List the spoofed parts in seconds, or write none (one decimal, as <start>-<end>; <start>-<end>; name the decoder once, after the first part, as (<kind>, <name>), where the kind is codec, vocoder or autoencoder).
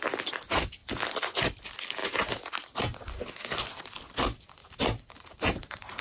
4.6-6.0 (vocoder, BigVGAN v2)